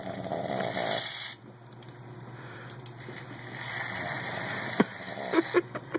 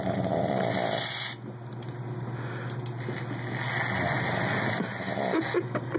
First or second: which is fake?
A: first